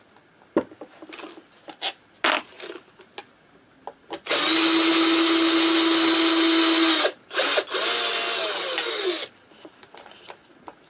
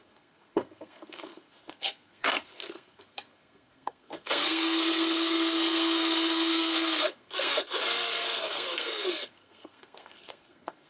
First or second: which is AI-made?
second